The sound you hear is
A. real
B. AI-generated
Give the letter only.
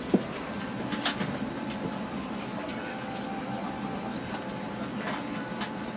A